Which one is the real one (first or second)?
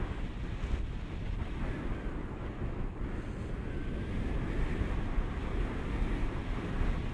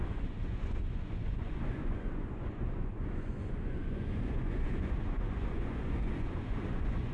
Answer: first